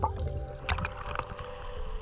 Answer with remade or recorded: recorded